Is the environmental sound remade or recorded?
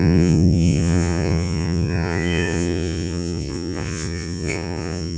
remade